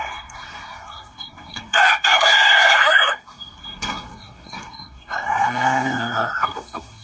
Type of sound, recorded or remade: remade